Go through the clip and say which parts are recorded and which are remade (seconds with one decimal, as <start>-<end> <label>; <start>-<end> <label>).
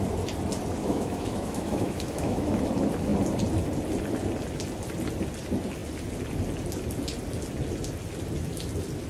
0.0-0.8 recorded; 0.8-2.6 remade; 2.6-9.1 recorded